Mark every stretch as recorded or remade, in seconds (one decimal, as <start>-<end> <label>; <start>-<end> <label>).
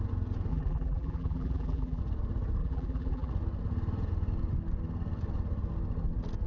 0.0-0.5 recorded; 0.5-2.0 remade; 2.0-2.6 recorded; 2.6-3.3 remade; 3.3-6.5 recorded